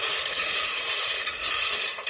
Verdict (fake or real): fake